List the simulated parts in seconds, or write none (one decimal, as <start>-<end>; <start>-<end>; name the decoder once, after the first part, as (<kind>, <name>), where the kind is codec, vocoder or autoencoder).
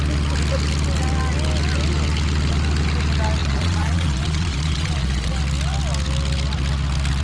3.4-5.4 (vocoder, Vocos)